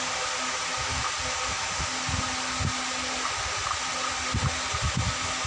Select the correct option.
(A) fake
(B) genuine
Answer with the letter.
B